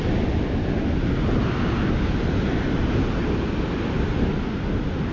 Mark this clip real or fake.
real